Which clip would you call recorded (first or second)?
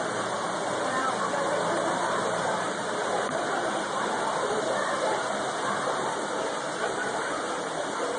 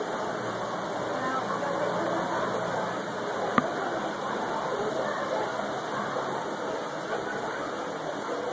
second